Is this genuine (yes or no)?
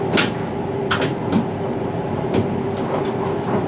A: yes